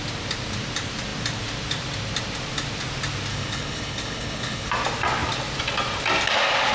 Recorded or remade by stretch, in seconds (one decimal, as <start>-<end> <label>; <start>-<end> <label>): 0.0-3.3 recorded; 3.3-4.7 remade; 4.7-6.7 recorded